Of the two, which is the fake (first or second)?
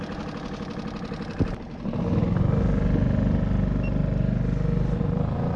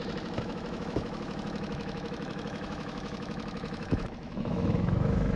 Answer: second